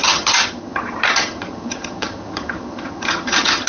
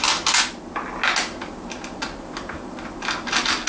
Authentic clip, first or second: second